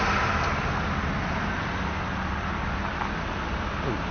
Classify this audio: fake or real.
real